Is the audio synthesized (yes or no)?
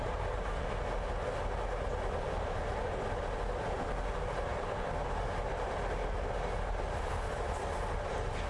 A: no